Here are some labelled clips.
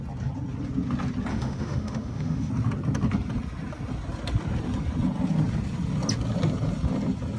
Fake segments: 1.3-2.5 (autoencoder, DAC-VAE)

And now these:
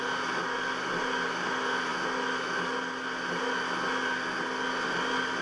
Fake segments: none

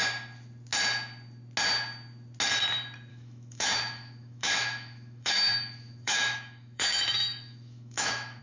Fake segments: 3.1-8.4 (autoencoder, DAC-VAE)

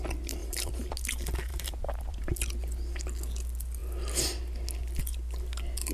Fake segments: 0.4-0.9 (vocoder, BigVGAN v2); 1.5-2.3

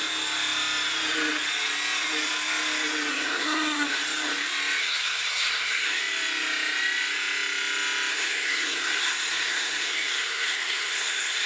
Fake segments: 3.1-4.0 (codec, SNAC); 4.8-6.0; 8.1-11.5

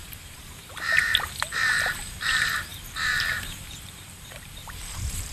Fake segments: 0.0-5.3 (vocoder, BigVGAN v2)

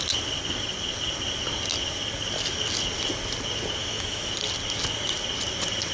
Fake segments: 3.8-4.3 (autoencoder, DAC-VAE)

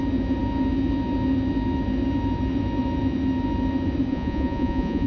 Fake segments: 4.1-5.1 (vocoder, Vocos)